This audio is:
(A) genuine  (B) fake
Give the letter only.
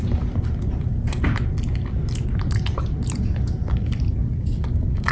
A